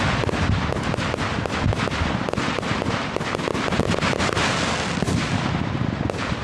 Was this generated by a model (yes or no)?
no